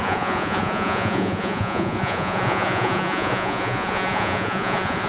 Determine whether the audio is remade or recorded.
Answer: remade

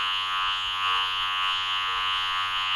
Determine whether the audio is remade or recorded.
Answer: remade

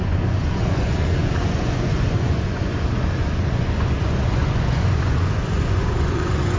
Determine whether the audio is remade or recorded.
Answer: remade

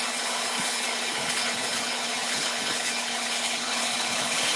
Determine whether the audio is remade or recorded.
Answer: remade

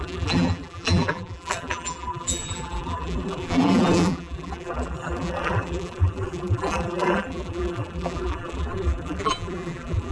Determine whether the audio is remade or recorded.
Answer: remade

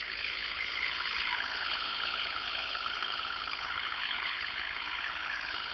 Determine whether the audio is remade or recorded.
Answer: remade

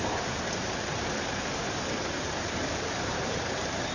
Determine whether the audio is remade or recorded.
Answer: remade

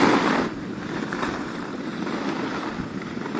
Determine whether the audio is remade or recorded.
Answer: recorded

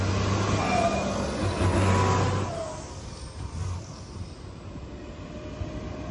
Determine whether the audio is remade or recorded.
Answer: recorded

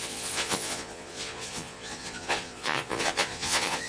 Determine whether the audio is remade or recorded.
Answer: remade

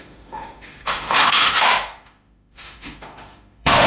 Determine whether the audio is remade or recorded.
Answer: remade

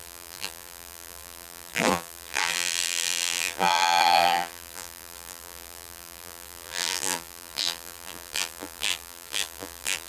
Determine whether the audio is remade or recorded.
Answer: remade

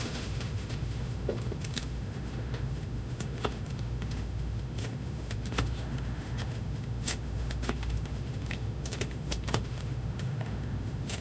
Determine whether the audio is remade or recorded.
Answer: remade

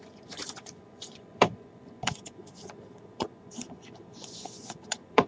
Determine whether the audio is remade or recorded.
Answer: remade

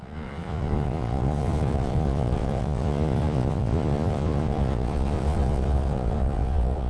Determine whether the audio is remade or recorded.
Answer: remade